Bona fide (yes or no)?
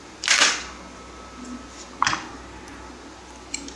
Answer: yes